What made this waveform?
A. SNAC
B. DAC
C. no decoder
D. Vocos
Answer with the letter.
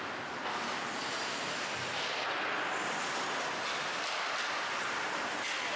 C